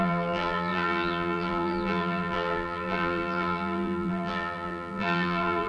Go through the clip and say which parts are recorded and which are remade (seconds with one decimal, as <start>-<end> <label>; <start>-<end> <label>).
0.0-5.7 remade